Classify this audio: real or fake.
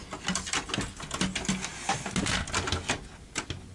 real